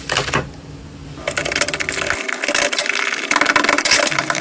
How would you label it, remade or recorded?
recorded